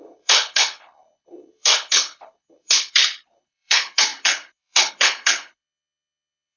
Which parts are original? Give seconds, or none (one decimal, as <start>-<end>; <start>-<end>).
none